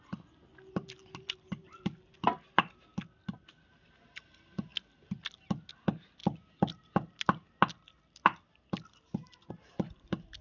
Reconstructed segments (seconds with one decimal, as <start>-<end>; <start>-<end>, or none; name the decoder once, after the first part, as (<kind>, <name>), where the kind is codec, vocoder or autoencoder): none